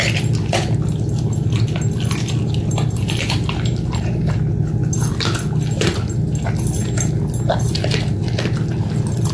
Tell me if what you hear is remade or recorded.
recorded